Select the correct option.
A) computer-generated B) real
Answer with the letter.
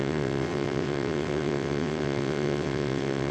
A